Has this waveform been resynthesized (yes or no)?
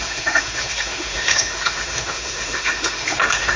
yes